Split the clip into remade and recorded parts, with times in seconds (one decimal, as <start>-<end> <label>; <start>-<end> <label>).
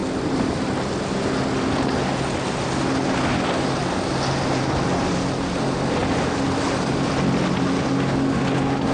0.0-6.0 recorded; 6.0-7.1 remade; 7.1-8.9 recorded